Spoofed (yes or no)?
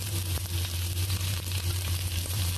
yes